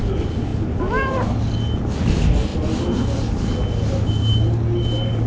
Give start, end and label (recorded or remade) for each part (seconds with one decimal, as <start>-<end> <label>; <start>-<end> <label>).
0.0-5.3 recorded